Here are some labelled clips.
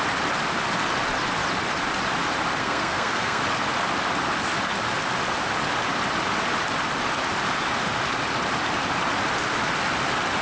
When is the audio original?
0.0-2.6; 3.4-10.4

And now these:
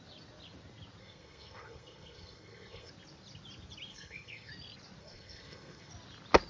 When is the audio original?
0.0-1.0; 2.9-3.9; 4.5-5.0; 5.9-6.5

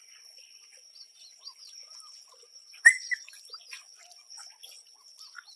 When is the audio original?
0.0-5.6

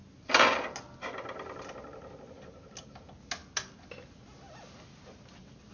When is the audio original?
0.0-5.7

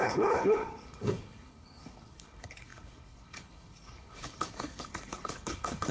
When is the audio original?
none

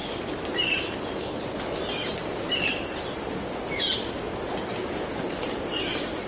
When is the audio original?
0.0-6.3